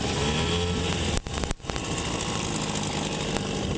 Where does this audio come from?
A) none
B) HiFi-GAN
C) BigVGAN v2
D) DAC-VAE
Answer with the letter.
A